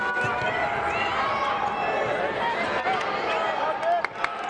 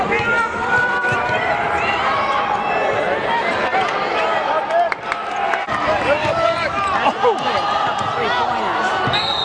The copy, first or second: second